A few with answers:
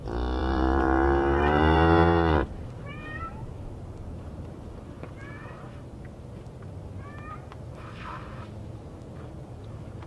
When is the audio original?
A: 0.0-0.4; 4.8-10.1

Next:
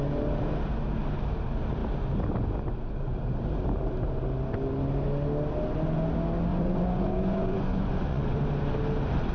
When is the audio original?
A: 0.0-6.5; 8.4-9.3

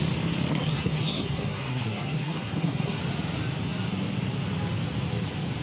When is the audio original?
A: 0.0-0.5; 3.0-5.6

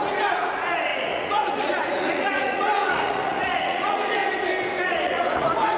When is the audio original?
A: 4.2-4.8

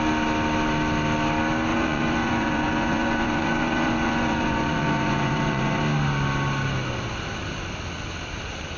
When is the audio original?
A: 0.0-1.7; 5.8-8.8

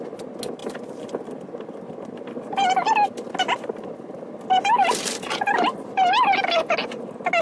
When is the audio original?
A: 0.0-7.4

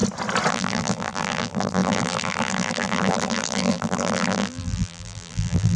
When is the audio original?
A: 0.0-0.5